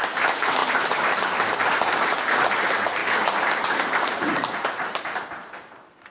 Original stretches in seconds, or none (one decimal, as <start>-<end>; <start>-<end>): 0.0-0.6; 1.6-3.0